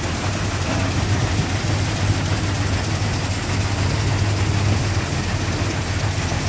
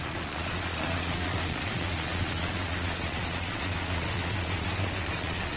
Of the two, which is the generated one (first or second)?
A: second